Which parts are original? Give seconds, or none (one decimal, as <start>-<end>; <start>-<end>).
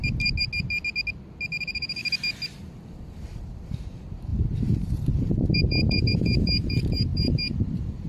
0.0-1.6; 2.0-3.4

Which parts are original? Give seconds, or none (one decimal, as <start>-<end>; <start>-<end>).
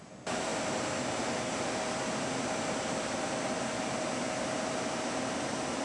0.0-5.8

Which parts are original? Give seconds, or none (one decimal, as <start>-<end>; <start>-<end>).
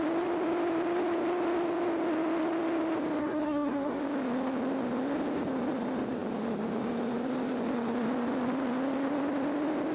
0.0-3.2; 4.0-9.9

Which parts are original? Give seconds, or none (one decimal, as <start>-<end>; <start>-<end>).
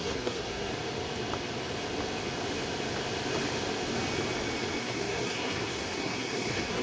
0.7-4.8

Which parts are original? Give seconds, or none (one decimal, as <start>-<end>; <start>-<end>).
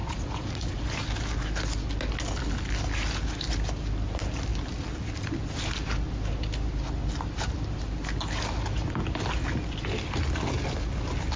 0.8-11.4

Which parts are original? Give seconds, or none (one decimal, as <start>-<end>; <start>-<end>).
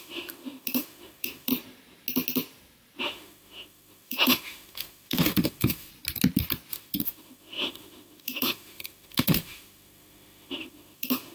1.5-3.0; 5.9-6.7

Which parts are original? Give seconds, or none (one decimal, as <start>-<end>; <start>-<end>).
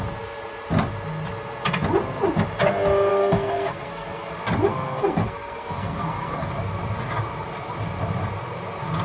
0.0-3.1; 4.3-4.7; 6.5-9.0